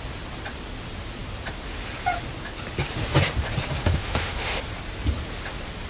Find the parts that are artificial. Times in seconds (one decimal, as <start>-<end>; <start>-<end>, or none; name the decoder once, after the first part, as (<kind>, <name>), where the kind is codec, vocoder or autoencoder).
3.8-4.6 (autoencoder, DAC-VAE)